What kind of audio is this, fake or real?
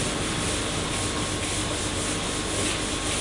real